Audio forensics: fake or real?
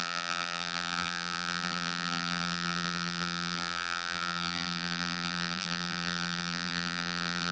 fake